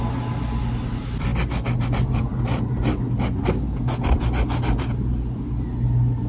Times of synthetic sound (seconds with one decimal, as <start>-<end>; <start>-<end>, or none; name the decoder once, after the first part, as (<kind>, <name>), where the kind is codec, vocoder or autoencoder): none